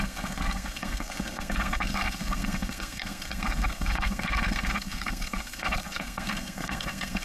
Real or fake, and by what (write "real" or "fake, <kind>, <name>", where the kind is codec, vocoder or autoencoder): fake, codec, SNAC